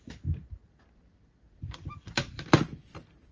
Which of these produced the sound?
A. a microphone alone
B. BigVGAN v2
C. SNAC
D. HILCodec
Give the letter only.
B